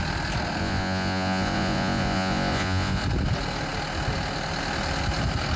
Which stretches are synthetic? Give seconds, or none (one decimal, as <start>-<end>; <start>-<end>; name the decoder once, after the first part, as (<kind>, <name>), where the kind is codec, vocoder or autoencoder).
0.6-3.0 (vocoder, Vocos)